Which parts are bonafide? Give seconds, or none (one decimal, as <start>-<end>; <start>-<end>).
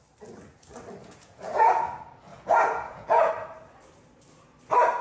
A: 0.0-1.0; 1.7-2.3; 3.3-5.0